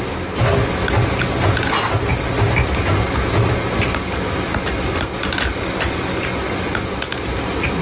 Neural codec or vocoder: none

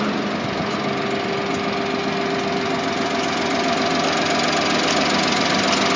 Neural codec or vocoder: none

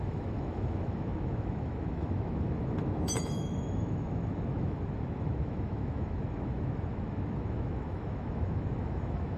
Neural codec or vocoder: autoencoder, DAC-VAE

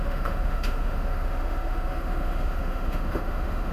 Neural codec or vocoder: autoencoder, DAC-VAE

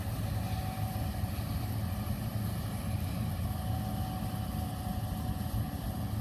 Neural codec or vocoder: none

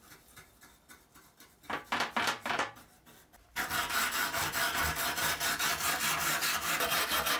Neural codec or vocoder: vocoder, BigVGAN v2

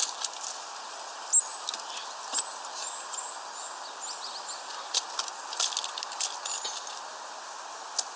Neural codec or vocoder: none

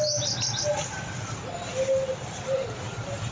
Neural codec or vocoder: none